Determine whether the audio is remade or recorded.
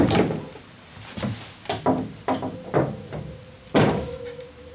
recorded